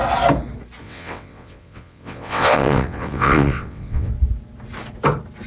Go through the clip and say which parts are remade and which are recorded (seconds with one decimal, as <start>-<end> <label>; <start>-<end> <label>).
0.0-0.8 recorded; 0.8-4.1 remade; 4.1-5.5 recorded